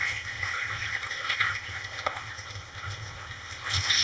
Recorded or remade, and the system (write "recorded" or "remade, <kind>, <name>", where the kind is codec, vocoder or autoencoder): remade, codec, ZipCodec